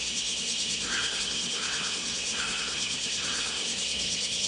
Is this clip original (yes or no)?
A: no